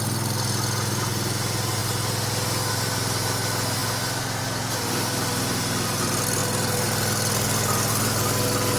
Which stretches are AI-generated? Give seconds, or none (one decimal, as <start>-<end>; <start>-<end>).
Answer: none

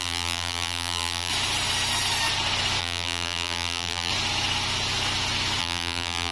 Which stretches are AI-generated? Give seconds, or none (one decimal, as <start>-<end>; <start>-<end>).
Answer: 0.0-1.3; 2.8-4.1; 5.6-6.3